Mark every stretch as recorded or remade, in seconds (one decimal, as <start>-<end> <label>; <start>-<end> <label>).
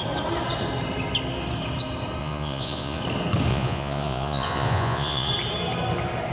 0.0-2.2 recorded; 2.2-3.0 remade; 3.0-3.5 recorded; 3.5-5.3 remade; 5.3-6.3 recorded